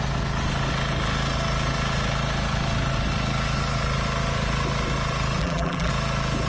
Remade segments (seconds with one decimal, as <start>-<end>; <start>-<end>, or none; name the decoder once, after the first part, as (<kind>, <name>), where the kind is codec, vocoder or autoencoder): 5.4-5.9 (vocoder, BigVGAN v2)